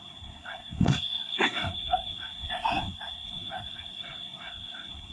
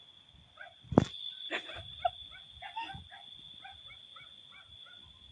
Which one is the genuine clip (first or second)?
second